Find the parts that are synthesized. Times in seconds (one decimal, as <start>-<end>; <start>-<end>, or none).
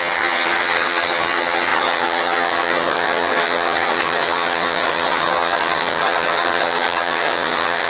0.0-7.9